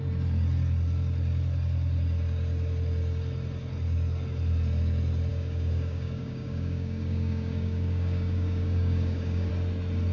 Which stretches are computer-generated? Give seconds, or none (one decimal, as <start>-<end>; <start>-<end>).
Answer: 5.3-9.5